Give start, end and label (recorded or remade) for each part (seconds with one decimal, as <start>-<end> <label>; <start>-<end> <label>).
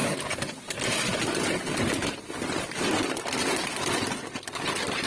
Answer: 0.0-5.1 recorded